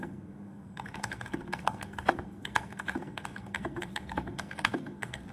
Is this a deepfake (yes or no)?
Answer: yes